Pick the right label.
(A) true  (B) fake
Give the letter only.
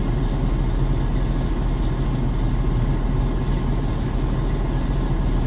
A